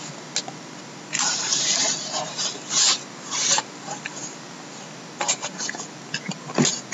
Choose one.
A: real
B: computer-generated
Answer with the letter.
A